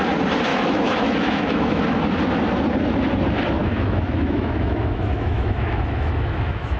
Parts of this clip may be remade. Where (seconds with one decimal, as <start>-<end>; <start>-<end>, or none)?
0.5-1.8; 3.6-6.8